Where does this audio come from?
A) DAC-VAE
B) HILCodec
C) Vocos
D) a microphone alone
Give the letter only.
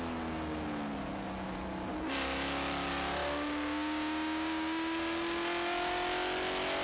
D